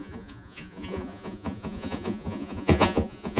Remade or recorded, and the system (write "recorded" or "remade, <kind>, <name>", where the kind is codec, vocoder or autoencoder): remade, vocoder, Vocos